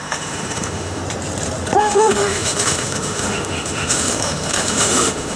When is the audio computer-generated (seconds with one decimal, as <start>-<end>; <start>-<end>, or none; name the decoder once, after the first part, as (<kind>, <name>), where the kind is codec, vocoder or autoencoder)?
0.0-1.0 (autoencoder, DAC-VAE); 1.8-5.4